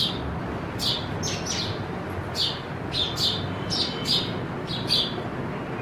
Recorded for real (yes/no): yes